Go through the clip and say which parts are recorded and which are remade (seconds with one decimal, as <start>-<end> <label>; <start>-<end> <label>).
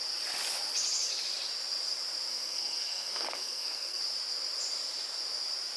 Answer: 0.0-2.3 recorded; 2.3-4.0 remade; 4.0-5.8 recorded